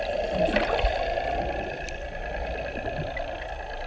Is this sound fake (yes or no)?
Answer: no